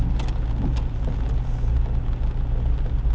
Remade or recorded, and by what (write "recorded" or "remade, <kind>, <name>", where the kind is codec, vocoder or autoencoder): recorded